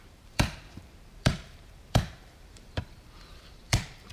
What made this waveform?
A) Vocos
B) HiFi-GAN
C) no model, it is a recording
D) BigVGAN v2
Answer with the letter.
D